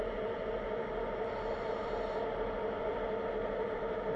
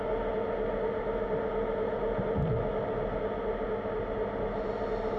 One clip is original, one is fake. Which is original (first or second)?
second